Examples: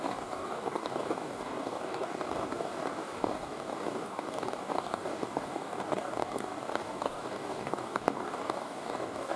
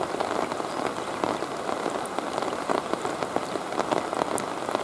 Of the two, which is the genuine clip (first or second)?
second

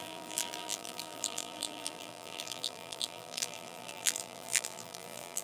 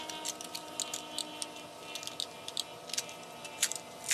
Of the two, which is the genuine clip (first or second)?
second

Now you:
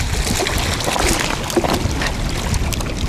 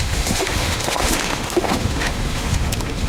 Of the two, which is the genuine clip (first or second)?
first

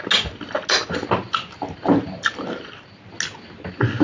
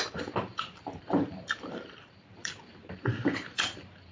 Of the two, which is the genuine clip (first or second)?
first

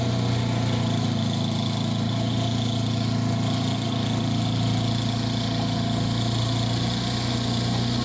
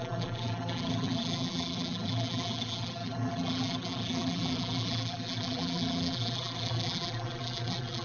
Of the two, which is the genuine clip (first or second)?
first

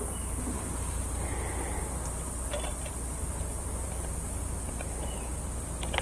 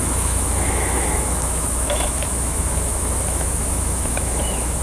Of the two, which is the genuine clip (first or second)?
first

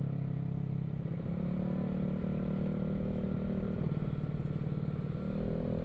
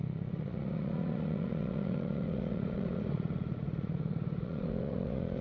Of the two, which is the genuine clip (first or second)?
first